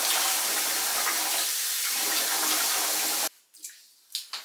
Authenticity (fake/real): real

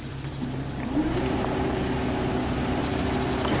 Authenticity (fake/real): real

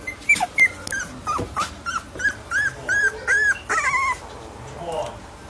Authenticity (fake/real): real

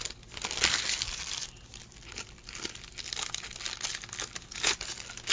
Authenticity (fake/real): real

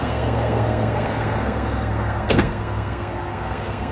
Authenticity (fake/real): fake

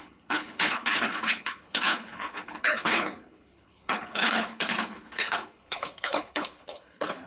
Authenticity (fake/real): fake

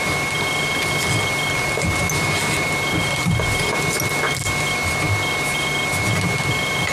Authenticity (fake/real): real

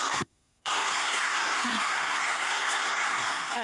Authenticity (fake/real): fake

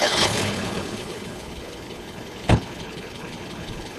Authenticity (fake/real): fake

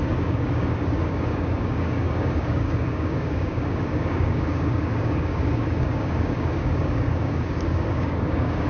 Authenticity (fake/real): fake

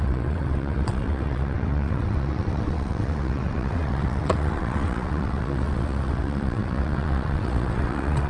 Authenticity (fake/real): fake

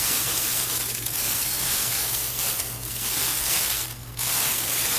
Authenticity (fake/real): fake